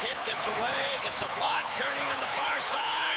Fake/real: fake